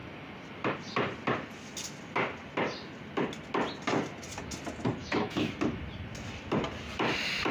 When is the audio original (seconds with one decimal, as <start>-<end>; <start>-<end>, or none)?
0.0-5.0; 5.5-7.5